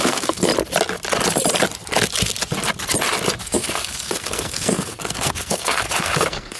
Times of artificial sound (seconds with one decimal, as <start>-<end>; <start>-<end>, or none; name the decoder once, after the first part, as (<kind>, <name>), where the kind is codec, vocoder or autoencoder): 0.0-0.5 (codec, SNAC); 3.4-6.6